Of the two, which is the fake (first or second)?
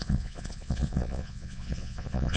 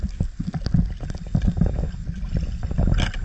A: first